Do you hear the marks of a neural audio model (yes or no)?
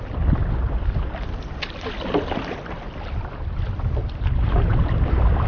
no